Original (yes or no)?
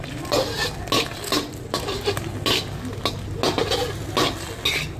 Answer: yes